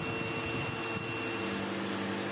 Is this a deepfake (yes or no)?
no